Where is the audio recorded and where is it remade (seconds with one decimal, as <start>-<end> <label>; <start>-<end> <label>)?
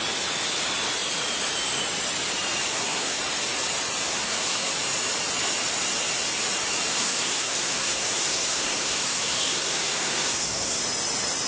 0.0-2.7 recorded; 2.7-3.2 remade; 3.2-4.1 recorded; 4.1-4.7 remade; 4.7-6.9 recorded; 6.9-10.8 remade; 10.8-11.5 recorded